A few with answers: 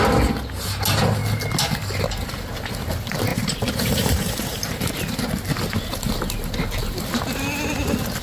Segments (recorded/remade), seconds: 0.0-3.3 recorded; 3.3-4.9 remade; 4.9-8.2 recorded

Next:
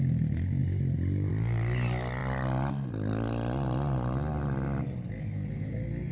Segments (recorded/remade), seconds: 0.0-6.1 recorded